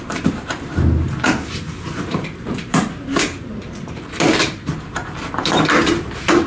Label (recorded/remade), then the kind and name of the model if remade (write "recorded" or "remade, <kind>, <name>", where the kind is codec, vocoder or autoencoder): remade, vocoder, BigVGAN v2